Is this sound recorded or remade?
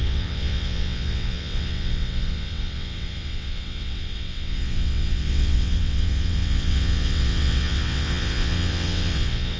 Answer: remade